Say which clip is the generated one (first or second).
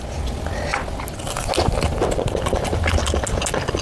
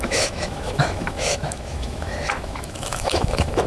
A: second